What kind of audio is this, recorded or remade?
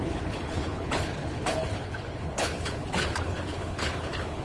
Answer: remade